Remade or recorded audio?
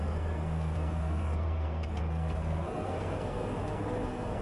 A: remade